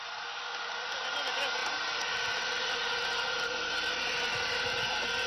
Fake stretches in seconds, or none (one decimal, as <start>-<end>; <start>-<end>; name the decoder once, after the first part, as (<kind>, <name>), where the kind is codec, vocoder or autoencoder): none